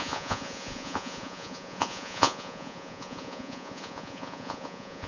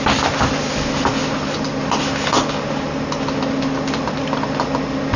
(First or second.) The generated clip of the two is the first